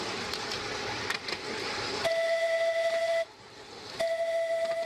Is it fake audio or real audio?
real